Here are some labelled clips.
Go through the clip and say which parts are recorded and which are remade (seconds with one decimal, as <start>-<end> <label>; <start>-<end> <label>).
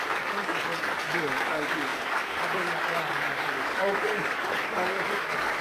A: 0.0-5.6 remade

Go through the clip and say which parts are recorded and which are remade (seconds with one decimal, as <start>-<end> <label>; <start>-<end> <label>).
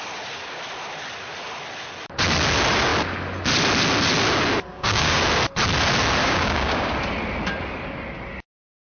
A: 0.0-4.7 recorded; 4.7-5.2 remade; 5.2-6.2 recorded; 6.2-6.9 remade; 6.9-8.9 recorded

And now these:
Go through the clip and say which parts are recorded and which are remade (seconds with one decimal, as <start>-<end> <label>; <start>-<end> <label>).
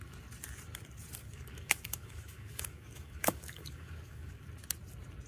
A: 0.0-1.2 recorded; 1.2-4.4 remade; 4.4-5.3 recorded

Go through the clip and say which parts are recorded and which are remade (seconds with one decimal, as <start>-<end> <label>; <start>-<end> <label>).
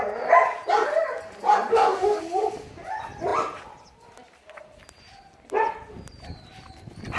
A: 0.0-1.7 recorded; 1.7-2.2 remade; 2.2-7.2 recorded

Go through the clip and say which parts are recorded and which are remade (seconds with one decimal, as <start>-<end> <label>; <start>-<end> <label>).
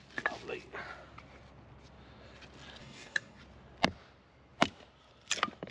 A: 0.0-2.8 recorded; 2.8-3.4 remade; 3.4-5.7 recorded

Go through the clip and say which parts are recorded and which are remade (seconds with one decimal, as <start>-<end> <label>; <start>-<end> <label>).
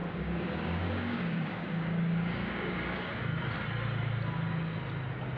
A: 0.0-3.2 remade; 3.2-5.4 recorded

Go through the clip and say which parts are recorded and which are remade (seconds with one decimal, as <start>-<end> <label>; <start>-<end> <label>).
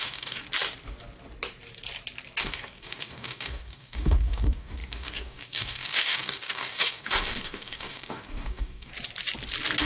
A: 0.0-0.4 remade; 0.4-2.4 recorded; 2.4-8.9 remade; 8.9-9.8 recorded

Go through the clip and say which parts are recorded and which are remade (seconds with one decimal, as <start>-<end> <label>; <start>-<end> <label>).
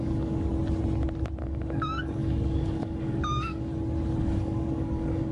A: 0.0-0.5 remade; 0.5-1.4 recorded; 1.4-3.7 remade; 3.7-4.2 recorded; 4.2-5.3 remade